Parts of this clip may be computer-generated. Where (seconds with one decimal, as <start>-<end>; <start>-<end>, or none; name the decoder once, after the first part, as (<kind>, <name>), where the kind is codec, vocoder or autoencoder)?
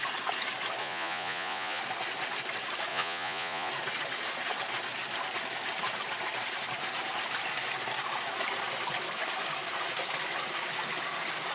0.8-1.8 (vocoder, Vocos); 2.9-3.7